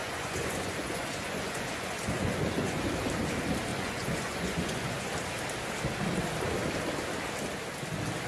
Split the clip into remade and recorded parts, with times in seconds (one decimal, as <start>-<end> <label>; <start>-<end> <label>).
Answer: 0.0-2.8 remade; 2.8-3.7 recorded; 3.7-5.1 remade; 5.1-8.3 recorded